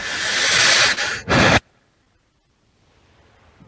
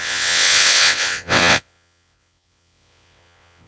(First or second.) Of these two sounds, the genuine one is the first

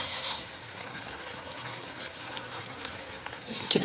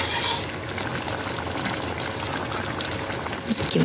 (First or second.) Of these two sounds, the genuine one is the second